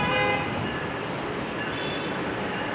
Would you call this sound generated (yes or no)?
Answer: no